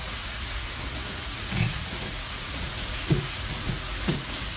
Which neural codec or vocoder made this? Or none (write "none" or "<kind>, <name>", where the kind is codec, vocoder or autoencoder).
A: vocoder, Vocos